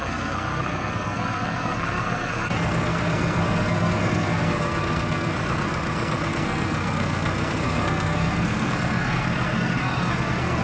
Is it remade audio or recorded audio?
remade